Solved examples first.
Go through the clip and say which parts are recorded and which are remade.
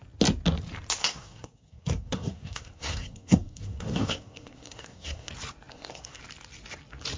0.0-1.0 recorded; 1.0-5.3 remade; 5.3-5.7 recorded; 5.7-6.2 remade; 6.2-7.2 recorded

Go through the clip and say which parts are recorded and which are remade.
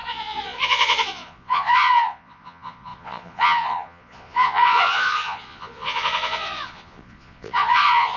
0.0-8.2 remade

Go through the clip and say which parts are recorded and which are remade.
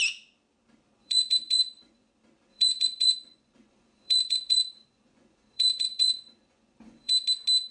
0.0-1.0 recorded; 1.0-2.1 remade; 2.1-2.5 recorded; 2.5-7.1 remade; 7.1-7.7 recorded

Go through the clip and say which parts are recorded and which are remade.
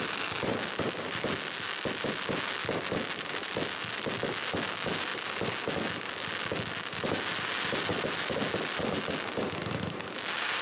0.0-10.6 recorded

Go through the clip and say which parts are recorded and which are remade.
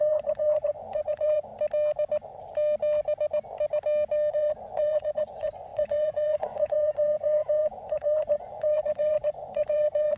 0.0-1.5 remade; 1.5-4.3 recorded; 4.3-10.2 remade